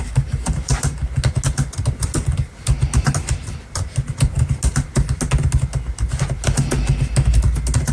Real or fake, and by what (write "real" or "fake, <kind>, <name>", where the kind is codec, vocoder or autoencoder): real